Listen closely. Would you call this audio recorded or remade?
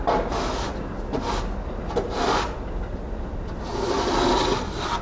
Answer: recorded